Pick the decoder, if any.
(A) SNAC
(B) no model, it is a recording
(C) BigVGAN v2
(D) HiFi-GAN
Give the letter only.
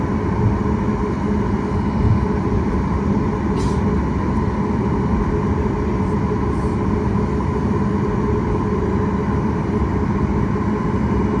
B